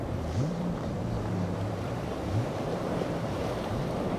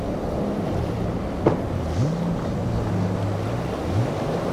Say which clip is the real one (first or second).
second